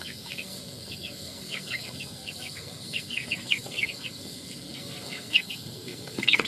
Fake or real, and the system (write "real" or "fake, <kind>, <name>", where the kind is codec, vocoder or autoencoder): fake, codec, SNAC